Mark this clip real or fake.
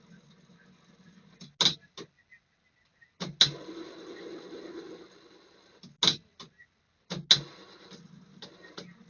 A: real